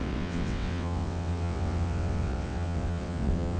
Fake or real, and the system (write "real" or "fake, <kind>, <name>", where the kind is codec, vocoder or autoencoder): fake, vocoder, WaveNeXt